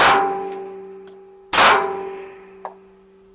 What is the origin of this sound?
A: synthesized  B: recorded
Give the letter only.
B